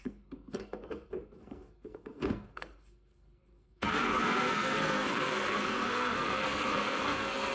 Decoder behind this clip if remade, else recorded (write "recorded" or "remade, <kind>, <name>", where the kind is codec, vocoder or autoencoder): remade, codec, SNAC